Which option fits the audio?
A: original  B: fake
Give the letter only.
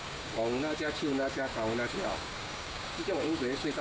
B